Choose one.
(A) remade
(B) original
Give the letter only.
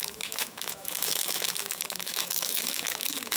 A